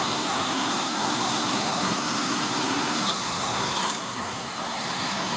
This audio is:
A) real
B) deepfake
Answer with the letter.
B